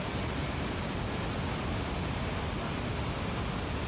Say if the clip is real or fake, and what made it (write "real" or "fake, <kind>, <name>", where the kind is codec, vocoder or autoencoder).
real